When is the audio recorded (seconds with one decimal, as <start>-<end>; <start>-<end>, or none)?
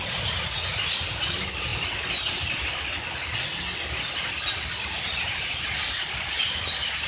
0.0-7.1